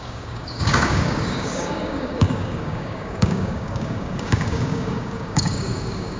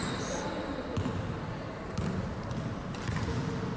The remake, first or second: first